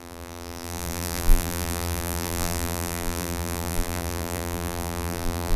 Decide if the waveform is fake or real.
fake